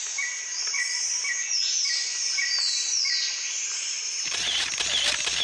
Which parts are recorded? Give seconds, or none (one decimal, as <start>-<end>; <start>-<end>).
0.0-0.5; 1.2-4.1; 4.7-5.4

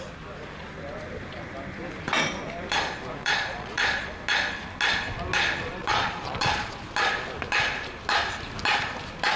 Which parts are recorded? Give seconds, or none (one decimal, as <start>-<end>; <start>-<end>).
0.0-3.2; 4.1-5.8; 6.8-9.4

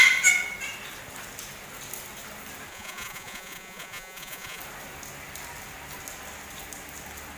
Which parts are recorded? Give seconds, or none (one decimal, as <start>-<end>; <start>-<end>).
0.0-2.7; 4.6-7.4

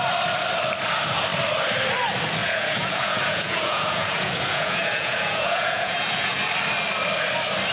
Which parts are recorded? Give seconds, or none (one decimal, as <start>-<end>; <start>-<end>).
0.0-2.4; 6.4-7.7

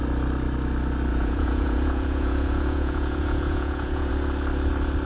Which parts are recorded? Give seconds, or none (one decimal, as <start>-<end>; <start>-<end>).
0.0-1.1; 4.1-5.0